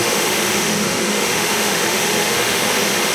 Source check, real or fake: fake